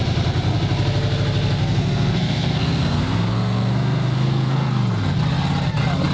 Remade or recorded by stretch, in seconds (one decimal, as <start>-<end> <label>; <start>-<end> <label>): 0.0-1.6 recorded; 1.6-4.7 remade; 4.7-6.1 recorded